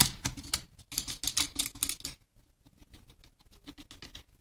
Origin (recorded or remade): recorded